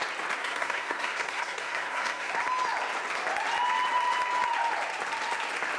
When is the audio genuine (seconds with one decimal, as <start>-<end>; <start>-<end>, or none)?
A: 0.0-0.4; 2.3-5.8